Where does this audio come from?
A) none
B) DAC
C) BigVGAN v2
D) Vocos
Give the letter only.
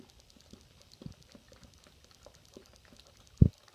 A